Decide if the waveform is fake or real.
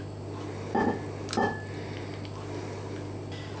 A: real